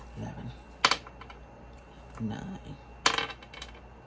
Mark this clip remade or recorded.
recorded